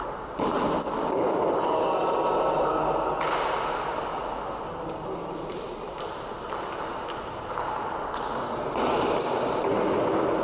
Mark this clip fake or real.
real